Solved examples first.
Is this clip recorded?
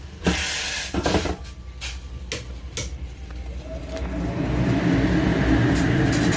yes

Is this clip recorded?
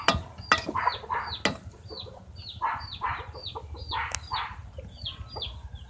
yes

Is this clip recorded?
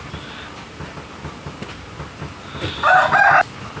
yes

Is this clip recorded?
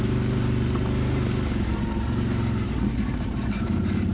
no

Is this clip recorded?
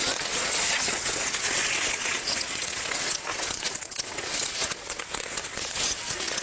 no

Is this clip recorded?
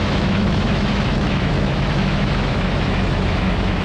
no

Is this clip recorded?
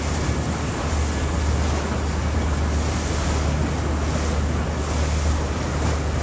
yes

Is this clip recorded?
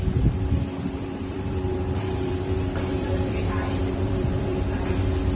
no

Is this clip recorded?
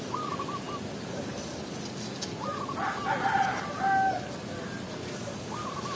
yes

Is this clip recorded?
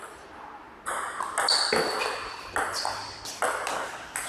yes